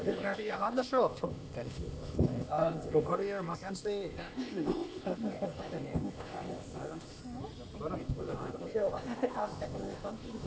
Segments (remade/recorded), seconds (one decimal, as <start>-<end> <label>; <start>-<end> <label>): 0.0-7.2 remade; 7.2-8.0 recorded; 8.0-10.5 remade